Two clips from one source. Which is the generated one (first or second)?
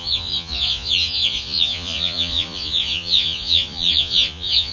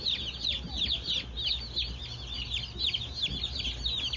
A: first